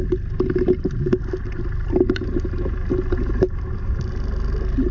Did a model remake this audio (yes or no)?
no